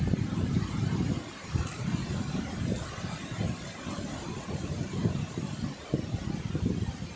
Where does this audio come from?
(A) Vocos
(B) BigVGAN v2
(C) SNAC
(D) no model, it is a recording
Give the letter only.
D